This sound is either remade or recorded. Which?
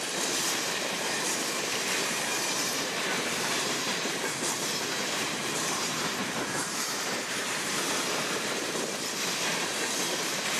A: remade